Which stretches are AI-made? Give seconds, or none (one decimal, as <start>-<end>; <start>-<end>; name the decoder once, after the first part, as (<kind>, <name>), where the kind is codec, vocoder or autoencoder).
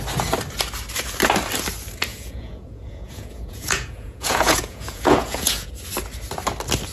2.1-5.7 (vocoder, Vocos)